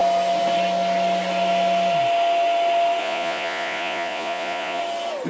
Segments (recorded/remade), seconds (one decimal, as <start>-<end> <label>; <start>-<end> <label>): 0.0-3.0 recorded; 3.0-4.8 remade; 4.8-5.3 recorded